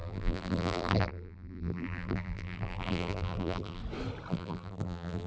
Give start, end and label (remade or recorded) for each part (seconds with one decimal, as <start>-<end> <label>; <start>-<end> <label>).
0.0-3.8 remade; 3.8-4.3 recorded; 4.3-5.3 remade